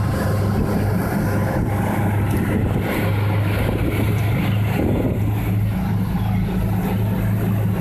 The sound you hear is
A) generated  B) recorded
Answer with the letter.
B